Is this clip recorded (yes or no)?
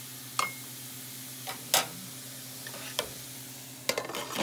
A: yes